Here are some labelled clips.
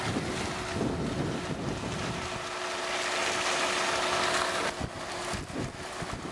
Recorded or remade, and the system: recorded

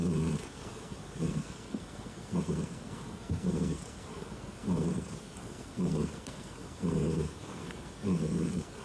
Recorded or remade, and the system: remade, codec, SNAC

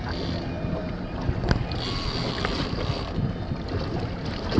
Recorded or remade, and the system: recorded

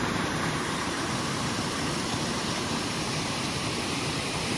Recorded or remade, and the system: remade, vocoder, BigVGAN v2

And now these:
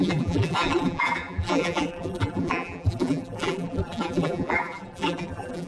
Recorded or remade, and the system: remade, vocoder, BigVGAN v2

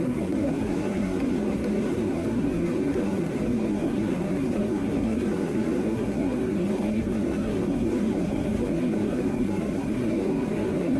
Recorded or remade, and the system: remade, codec, SNAC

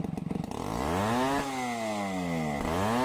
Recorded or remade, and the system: recorded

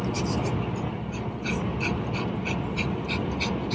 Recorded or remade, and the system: recorded